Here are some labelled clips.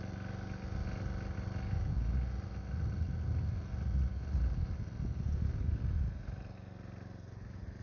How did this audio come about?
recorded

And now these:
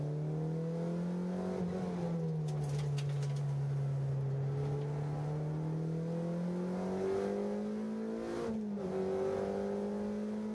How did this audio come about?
recorded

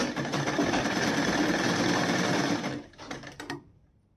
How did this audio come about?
remade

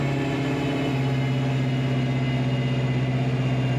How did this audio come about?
recorded